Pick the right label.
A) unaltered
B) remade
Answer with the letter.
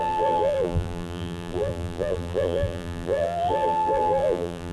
B